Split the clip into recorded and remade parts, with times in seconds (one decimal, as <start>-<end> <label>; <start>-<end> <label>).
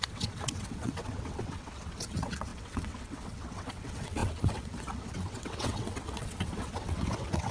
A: 0.0-7.5 remade